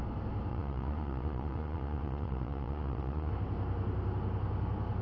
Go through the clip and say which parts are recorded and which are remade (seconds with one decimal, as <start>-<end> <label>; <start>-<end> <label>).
0.0-0.5 recorded; 0.5-3.3 remade; 3.3-5.0 recorded